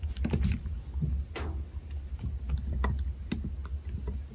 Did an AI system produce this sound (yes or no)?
no